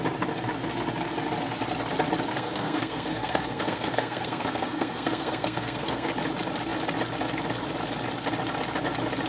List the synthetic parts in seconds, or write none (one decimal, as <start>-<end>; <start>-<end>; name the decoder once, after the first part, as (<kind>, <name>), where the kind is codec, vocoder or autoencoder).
2.3-6.1 (codec, SNAC)